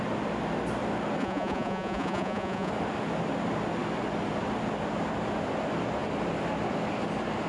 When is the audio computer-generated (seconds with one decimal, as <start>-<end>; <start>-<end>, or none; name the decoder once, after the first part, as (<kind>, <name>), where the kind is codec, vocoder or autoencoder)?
1.2-2.7 (vocoder, Vocos)